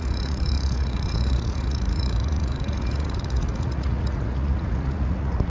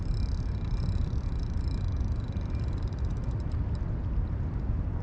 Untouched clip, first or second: second